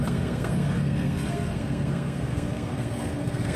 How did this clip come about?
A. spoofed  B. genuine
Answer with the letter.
A